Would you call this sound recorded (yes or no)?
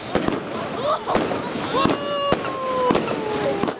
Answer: yes